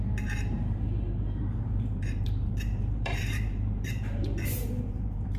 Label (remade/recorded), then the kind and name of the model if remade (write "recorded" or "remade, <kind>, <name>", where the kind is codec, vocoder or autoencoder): remade, vocoder, BigVGAN v2